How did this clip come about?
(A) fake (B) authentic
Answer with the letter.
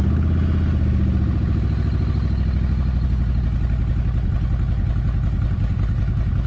B